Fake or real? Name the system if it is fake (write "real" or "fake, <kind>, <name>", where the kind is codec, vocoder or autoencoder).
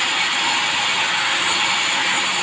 real